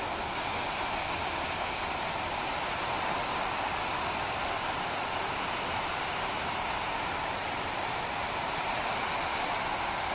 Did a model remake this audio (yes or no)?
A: no